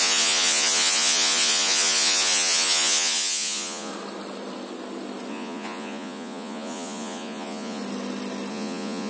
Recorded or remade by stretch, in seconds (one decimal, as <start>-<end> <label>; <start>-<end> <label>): 0.0-3.9 remade; 3.9-5.3 recorded; 5.3-7.8 remade; 7.8-8.5 recorded; 8.5-9.1 remade

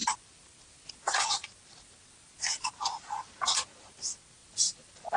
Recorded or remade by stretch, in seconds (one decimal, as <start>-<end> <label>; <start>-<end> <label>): 0.0-1.2 remade; 1.2-4.4 recorded; 4.4-5.2 remade